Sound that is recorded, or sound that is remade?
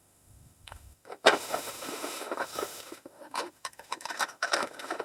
remade